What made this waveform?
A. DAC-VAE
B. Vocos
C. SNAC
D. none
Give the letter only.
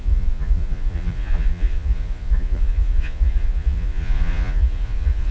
B